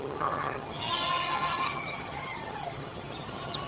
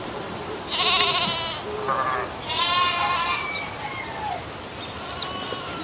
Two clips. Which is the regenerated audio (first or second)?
first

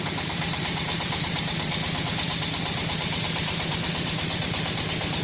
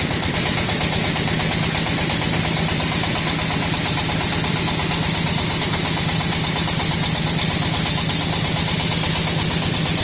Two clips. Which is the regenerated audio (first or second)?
first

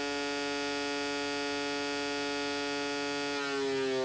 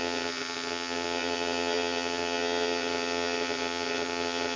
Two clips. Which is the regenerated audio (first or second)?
second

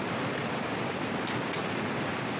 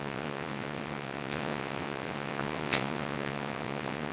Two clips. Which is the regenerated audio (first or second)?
second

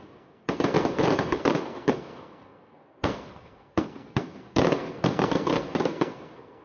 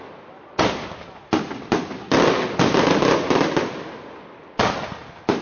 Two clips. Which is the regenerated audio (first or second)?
first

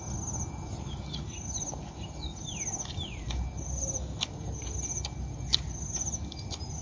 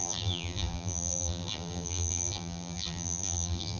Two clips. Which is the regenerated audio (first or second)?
second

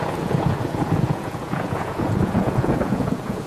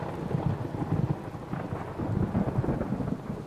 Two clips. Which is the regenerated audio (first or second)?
first